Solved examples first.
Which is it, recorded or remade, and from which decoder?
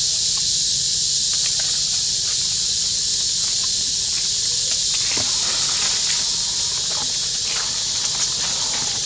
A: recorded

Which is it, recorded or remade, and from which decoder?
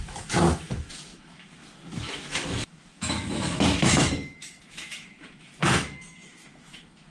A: remade, autoencoder, DAC-VAE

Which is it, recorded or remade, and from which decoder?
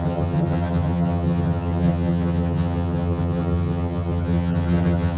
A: remade, vocoder, HiFi-GAN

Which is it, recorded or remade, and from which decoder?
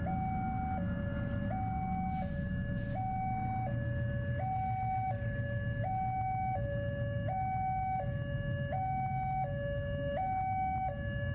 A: recorded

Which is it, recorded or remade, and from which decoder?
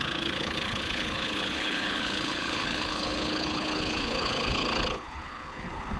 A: remade, codec, HILCodec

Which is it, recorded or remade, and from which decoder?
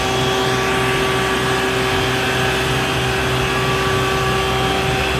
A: recorded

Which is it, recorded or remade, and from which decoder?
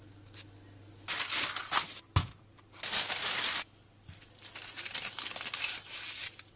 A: recorded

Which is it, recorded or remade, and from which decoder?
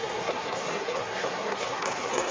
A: remade, codec, SNAC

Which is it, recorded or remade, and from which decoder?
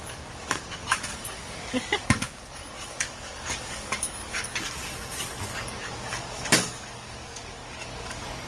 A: remade, codec, DAC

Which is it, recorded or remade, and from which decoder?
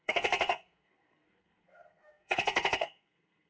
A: remade, codec, SNAC